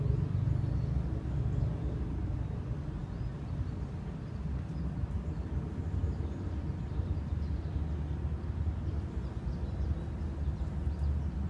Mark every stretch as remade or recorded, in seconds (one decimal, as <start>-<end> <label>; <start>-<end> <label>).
0.0-11.5 recorded